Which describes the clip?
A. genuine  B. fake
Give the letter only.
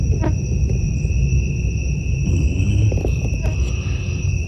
A